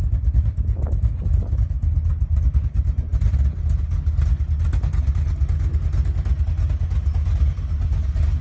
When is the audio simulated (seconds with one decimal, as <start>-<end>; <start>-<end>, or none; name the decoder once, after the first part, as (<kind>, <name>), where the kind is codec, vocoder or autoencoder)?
none

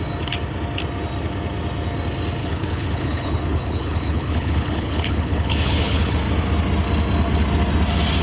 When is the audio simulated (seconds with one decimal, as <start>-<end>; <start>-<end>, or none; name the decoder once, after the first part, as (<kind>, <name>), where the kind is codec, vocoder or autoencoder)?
2.4-6.2 (codec, HILCodec)

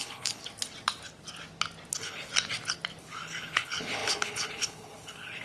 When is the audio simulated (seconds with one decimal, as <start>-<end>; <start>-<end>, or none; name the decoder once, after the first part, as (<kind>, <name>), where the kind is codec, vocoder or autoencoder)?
0.0-0.4 (codec, HILCodec); 1.9-2.3; 3.0-5.4

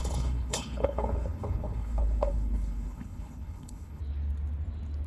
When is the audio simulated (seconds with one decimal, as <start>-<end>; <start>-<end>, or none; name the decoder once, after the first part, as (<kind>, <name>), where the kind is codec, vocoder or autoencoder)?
0.0-4.0 (codec, HILCodec)

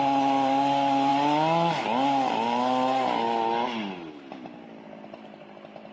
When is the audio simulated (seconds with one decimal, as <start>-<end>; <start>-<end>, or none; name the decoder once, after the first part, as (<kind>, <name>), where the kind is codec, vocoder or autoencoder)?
none

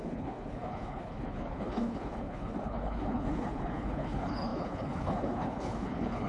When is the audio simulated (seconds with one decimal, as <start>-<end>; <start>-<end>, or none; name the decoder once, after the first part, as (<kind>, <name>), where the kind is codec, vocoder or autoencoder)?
0.0-6.3 (codec, HILCodec)